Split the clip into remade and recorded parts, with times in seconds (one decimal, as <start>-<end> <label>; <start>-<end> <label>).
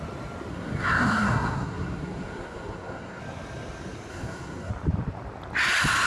0.0-0.5 recorded; 0.5-3.2 remade; 3.2-4.1 recorded; 4.1-4.7 remade; 4.7-6.1 recorded